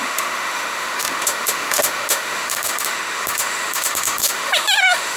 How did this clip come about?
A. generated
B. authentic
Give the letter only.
A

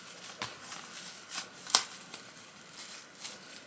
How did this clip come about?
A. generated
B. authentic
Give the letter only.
B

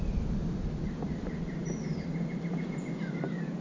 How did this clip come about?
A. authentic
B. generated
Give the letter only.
A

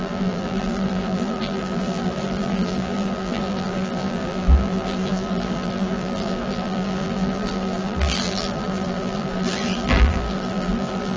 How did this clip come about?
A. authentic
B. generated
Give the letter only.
B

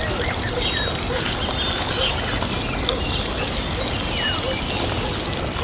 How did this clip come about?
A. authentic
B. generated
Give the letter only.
A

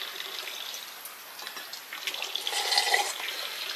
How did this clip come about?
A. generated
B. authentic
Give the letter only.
B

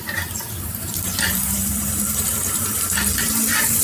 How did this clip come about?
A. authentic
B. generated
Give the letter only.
B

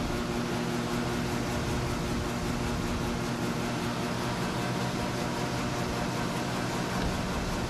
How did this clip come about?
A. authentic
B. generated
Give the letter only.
A